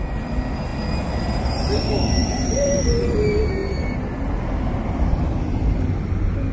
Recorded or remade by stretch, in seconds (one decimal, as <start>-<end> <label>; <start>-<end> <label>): 0.0-2.2 recorded; 2.2-2.9 remade; 2.9-6.5 recorded